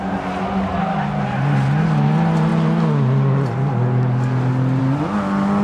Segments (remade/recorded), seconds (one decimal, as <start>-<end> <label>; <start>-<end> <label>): 0.0-5.6 recorded